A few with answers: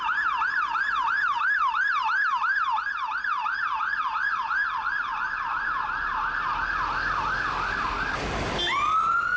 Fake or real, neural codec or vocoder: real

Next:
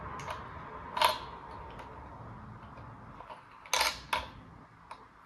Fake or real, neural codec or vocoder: real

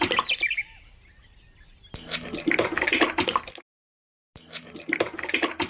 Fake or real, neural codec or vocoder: real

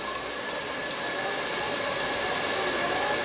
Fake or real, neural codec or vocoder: real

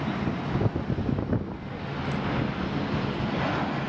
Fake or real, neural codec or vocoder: real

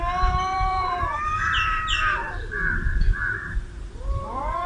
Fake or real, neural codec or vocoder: fake, vocoder, BigVGAN v2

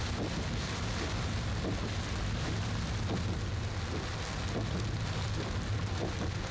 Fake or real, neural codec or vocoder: real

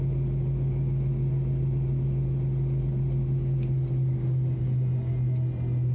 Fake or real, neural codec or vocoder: real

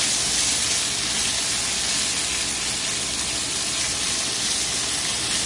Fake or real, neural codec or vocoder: real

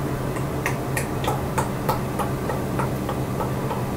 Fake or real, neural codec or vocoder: fake, vocoder, BigVGAN v2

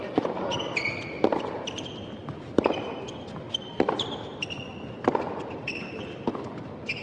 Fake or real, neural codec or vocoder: fake, vocoder, BigVGAN v2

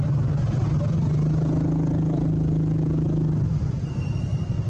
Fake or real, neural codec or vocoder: real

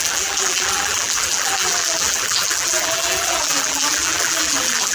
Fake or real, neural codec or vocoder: fake, vocoder, BigVGAN v2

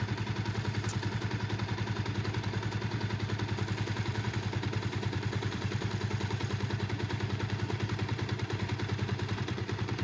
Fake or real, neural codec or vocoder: fake, vocoder, BigVGAN v2